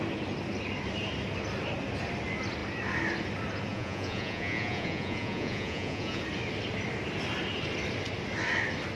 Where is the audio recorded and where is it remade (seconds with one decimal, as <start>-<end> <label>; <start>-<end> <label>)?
0.0-3.7 recorded; 3.7-6.2 remade; 6.2-9.0 recorded